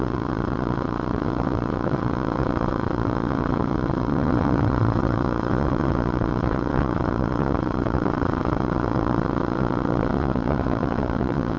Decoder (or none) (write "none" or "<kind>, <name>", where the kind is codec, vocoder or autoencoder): vocoder, WaveNeXt